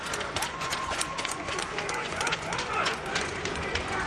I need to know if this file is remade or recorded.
remade